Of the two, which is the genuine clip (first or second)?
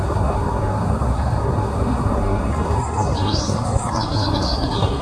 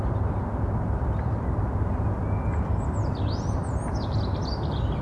second